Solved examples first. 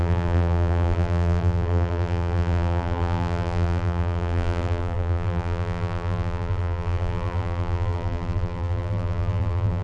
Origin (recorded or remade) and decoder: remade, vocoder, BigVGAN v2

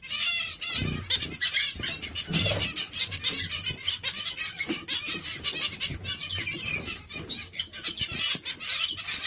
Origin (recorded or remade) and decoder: remade, vocoder, BigVGAN v2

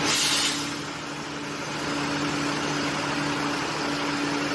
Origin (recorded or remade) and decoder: recorded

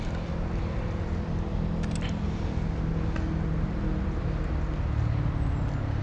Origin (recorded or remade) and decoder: recorded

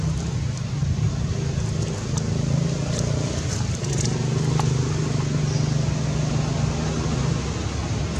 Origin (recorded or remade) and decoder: recorded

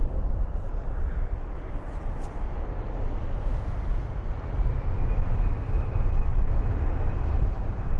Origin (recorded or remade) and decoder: recorded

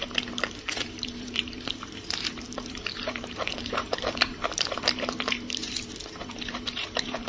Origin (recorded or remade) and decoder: remade, vocoder, BigVGAN v2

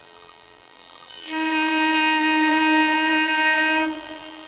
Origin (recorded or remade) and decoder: remade, vocoder, BigVGAN v2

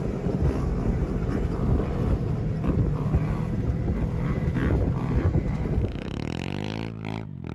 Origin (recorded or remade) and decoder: remade, vocoder, BigVGAN v2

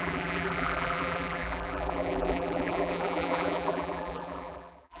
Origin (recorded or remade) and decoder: remade, vocoder, BigVGAN v2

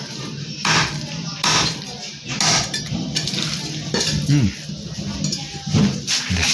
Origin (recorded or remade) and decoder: recorded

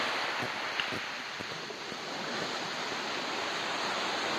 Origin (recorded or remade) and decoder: recorded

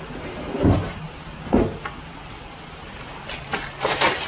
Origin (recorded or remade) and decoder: recorded